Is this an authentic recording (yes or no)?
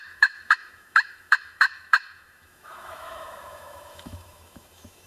no